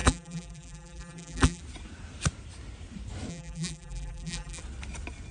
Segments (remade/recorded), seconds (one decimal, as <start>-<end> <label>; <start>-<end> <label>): 0.0-1.6 remade; 1.6-3.3 recorded; 3.3-4.6 remade; 4.6-5.3 recorded